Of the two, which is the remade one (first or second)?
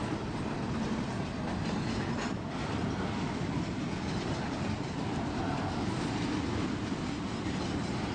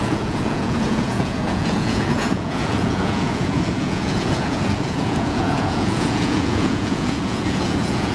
second